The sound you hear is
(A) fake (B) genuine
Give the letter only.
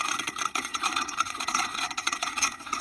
A